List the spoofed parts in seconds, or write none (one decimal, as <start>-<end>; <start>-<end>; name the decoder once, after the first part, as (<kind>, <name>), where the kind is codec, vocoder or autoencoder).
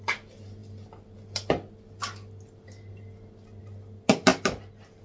none